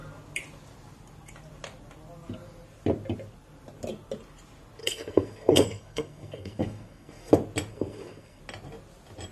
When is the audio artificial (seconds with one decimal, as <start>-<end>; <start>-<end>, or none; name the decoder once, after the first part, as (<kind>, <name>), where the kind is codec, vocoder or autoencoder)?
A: 4.8-7.3 (codec, SNAC); 7.7-8.4